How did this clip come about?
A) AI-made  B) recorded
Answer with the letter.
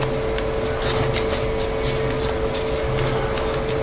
B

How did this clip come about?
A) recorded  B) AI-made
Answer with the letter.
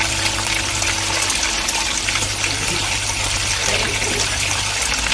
A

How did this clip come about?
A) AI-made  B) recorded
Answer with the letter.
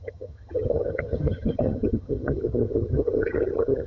A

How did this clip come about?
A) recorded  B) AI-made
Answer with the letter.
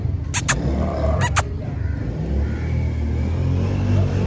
A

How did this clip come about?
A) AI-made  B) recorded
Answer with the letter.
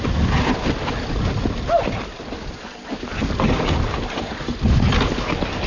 B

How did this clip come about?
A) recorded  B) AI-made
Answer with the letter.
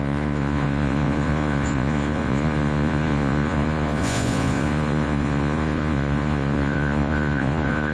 B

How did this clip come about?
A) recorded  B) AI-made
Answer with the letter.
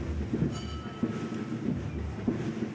A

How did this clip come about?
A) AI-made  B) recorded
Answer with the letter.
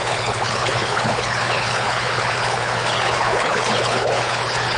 A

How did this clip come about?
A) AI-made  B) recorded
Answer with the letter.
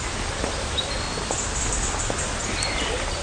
B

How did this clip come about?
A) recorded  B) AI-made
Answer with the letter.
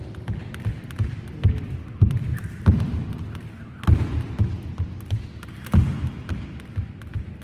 A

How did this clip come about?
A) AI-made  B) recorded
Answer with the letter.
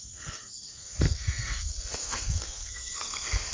A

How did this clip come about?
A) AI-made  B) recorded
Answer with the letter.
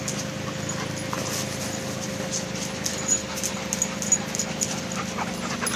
B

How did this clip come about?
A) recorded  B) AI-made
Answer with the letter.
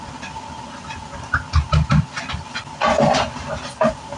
A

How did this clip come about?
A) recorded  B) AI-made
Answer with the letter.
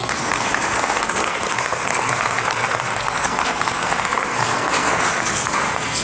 B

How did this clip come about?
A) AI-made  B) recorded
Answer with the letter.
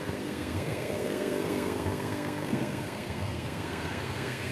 A